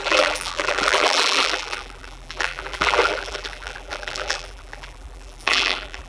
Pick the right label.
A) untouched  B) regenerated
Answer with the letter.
B